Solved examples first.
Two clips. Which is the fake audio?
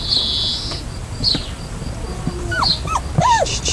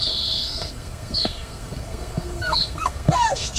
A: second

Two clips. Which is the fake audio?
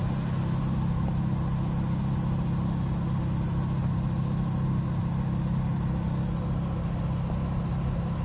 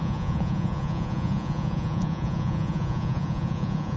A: second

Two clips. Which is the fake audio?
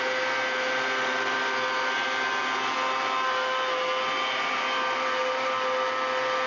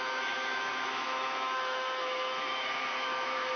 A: second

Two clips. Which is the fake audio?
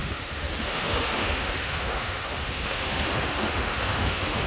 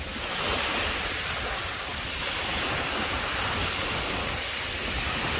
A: first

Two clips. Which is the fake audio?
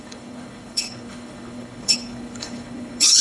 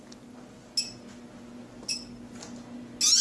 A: first